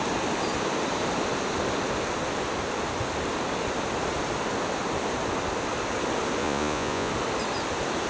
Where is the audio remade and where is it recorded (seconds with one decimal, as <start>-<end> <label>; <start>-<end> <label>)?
0.0-6.4 recorded; 6.4-7.1 remade; 7.1-8.1 recorded